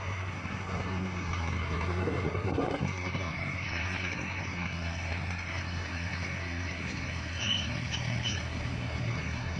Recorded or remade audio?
remade